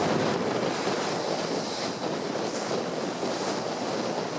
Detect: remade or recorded recorded